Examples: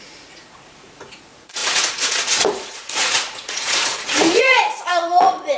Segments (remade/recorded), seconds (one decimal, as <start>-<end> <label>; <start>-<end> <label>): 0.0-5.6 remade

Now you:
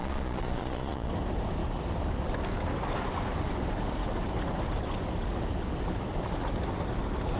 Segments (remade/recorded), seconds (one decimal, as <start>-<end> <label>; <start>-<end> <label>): 0.0-1.1 remade; 1.1-7.4 recorded

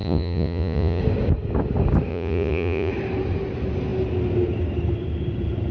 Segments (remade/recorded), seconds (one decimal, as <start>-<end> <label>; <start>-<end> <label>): 0.0-1.0 remade; 1.0-2.1 recorded; 2.1-2.9 remade; 2.9-5.7 recorded

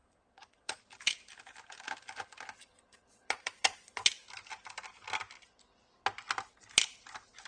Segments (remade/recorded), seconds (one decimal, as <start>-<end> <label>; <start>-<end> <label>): 0.0-0.8 remade; 0.8-2.6 recorded; 2.6-4.1 remade; 4.1-7.5 recorded

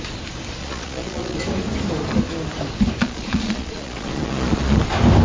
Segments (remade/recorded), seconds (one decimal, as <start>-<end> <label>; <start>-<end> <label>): 0.0-0.6 recorded; 0.6-1.4 remade; 1.4-3.0 recorded; 3.0-4.8 remade; 4.8-5.2 recorded

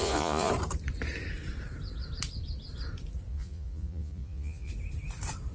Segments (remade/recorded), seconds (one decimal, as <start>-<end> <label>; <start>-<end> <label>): 0.0-0.5 remade; 0.5-3.3 recorded; 3.3-4.7 remade; 4.7-5.5 recorded